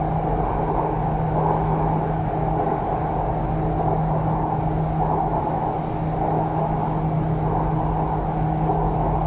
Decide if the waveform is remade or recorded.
recorded